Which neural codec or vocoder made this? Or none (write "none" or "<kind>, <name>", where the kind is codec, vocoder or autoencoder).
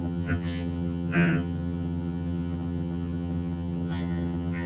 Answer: vocoder, HiFi-GAN